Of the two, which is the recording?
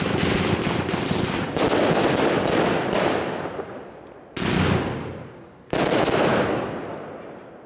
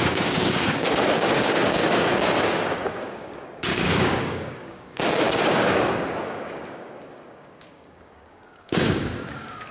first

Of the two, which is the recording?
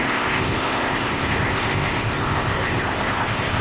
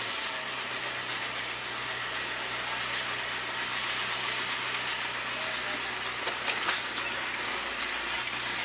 second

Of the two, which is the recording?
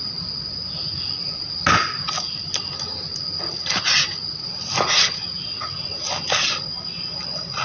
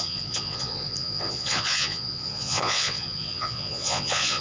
first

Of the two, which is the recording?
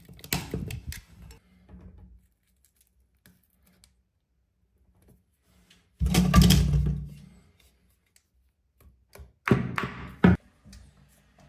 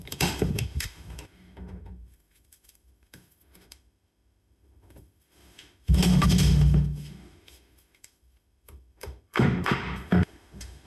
first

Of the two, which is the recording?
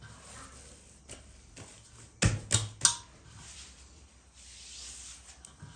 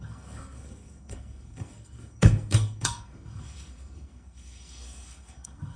first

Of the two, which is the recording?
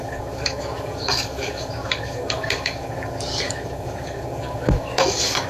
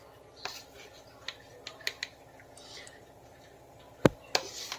second